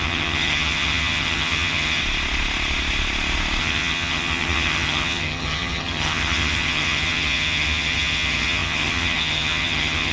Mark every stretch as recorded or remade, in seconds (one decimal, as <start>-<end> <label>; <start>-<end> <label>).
0.0-2.0 remade; 2.0-3.6 recorded; 3.6-10.1 remade